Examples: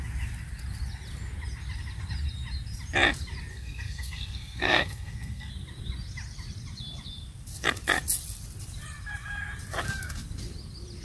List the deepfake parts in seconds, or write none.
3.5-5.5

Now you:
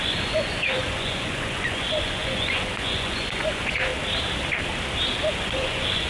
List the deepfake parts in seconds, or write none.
0.0-3.9; 5.3-6.1

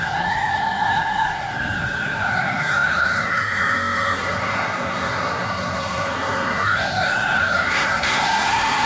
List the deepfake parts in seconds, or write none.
0.0-8.9